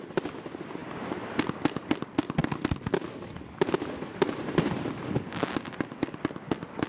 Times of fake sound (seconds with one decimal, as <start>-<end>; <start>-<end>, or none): none